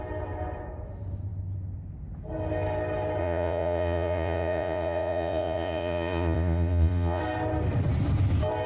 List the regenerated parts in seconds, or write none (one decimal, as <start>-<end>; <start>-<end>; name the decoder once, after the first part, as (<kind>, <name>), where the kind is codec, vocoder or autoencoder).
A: 3.2-7.2 (vocoder, Vocos)